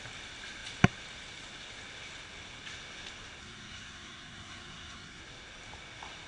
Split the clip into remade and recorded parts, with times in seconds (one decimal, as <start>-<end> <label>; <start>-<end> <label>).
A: 0.0-3.4 recorded; 3.4-5.2 remade; 5.2-6.3 recorded